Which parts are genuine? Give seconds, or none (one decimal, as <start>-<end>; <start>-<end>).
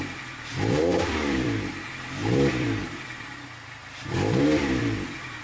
none